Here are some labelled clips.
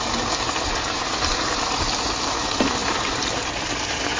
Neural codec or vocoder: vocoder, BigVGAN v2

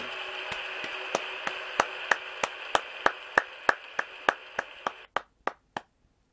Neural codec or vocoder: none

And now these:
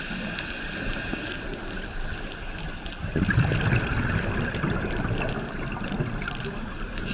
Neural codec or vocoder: none